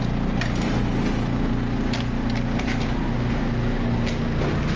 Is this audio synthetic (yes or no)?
no